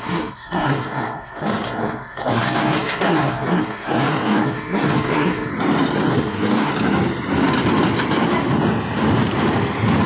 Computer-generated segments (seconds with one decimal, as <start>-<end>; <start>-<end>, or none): 0.0-5.5; 6.1-6.7